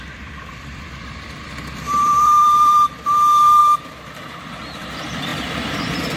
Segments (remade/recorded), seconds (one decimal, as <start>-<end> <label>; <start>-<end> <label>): 0.0-3.6 remade; 3.6-4.5 recorded; 4.5-6.2 remade